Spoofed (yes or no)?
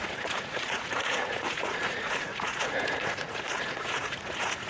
yes